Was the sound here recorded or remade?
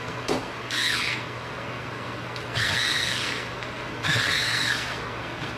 remade